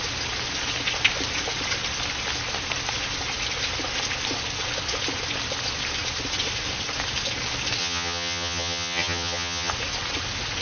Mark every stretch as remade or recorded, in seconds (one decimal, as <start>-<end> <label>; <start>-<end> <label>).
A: 0.0-7.8 recorded; 7.8-9.7 remade; 9.7-10.6 recorded